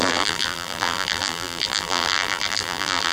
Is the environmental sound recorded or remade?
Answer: remade